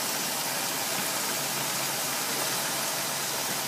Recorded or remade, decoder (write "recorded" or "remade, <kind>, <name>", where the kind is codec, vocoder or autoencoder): recorded